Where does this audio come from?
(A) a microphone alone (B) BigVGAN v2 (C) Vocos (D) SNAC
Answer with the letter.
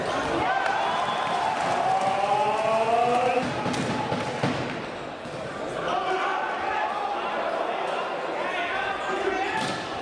A